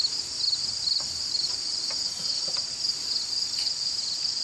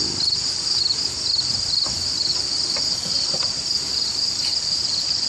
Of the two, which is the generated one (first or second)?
second